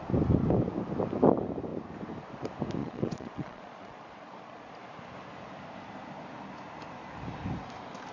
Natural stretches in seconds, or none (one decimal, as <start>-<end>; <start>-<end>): 0.0-2.8; 4.7-8.1